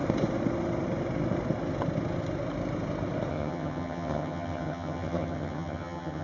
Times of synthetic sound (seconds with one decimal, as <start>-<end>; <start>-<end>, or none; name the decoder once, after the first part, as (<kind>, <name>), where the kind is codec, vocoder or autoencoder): 3.3-6.2 (vocoder, HiFi-GAN)